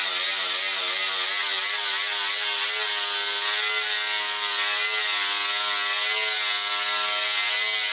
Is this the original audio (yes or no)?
yes